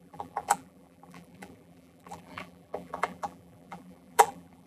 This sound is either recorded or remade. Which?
remade